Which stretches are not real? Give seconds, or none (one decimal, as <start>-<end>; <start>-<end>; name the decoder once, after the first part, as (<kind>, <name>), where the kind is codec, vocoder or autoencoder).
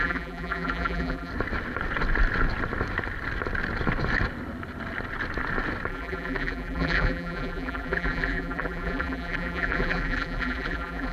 0.0-1.3 (vocoder, BigVGAN v2); 5.9-11.1